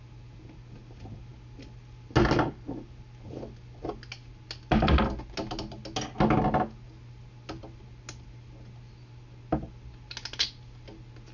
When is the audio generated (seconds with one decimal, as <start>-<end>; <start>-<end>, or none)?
none